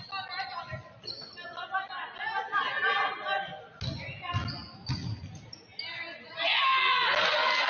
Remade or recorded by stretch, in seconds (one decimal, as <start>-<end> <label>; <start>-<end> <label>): 0.0-7.7 recorded